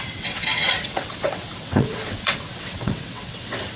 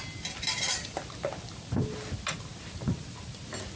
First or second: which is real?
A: second